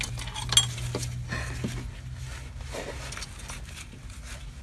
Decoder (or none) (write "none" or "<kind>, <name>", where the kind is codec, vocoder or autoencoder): none